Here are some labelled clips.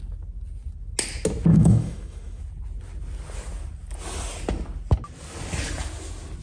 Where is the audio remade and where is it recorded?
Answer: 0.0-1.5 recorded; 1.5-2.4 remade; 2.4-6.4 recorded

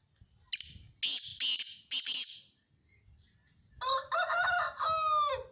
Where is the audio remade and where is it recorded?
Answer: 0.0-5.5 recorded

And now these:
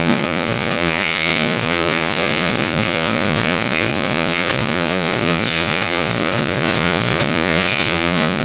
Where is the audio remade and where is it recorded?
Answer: 0.0-8.4 remade

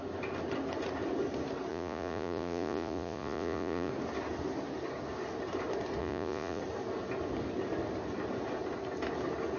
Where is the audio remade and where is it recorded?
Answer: 0.0-1.7 recorded; 1.7-3.9 remade; 3.9-6.0 recorded; 6.0-6.6 remade; 6.6-9.6 recorded

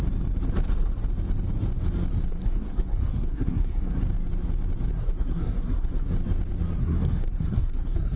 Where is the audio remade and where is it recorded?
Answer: 0.0-2.3 recorded; 2.3-4.0 remade; 4.0-4.9 recorded; 4.9-6.1 remade; 6.1-6.8 recorded; 6.8-8.2 remade